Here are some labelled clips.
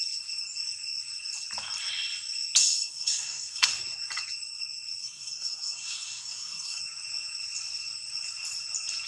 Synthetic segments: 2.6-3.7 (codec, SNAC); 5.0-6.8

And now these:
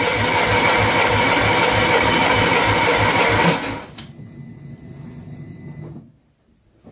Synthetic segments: none

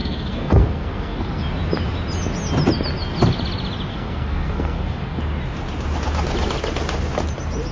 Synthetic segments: 0.0-1.4 (codec, SNAC); 3.9-5.2

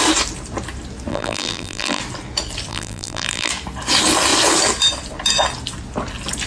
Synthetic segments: 1.1-2.0 (vocoder, BigVGAN v2); 2.7-3.5